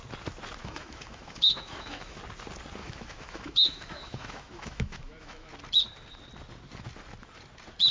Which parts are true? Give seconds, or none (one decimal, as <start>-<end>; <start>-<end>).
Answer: 0.0-0.6; 2.2-2.8; 5.5-7.9